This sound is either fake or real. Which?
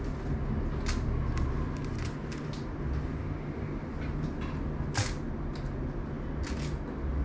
real